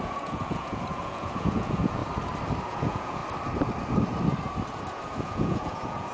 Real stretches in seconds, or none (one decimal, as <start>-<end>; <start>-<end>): 2.0-2.6; 3.2-4.7